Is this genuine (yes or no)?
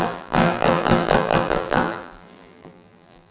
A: no